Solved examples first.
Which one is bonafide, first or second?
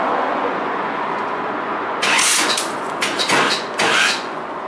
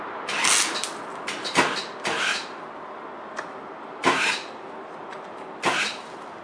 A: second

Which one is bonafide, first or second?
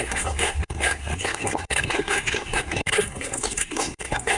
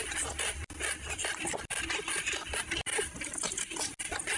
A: second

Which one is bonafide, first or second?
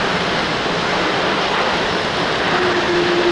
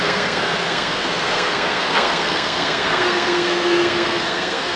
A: first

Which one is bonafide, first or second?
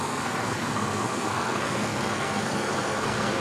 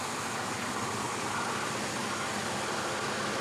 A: second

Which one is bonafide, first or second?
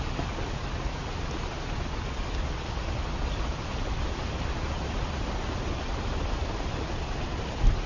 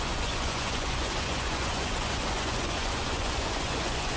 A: first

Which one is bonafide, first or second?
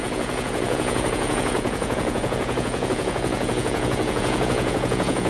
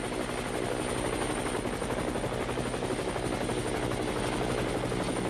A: second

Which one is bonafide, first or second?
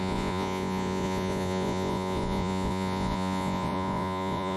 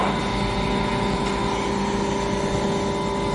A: second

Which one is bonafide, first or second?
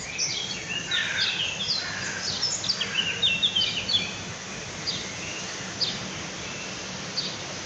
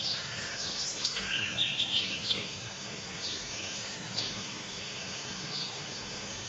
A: first